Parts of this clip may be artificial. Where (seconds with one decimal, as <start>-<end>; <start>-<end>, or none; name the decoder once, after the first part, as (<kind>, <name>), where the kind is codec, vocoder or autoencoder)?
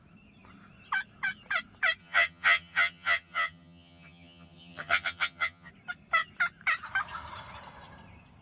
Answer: 2.0-5.7 (vocoder, HiFi-GAN)